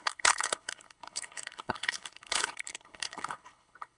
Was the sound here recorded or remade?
remade